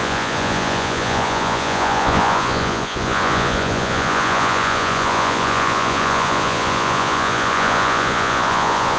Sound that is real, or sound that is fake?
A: fake